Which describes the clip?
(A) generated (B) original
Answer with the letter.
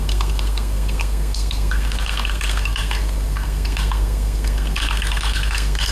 A